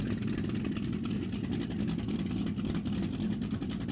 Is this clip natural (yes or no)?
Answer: yes